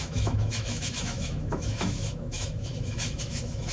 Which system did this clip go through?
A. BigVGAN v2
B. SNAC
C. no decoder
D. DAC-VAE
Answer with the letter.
D